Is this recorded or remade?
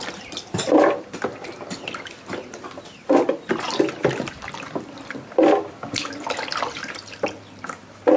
remade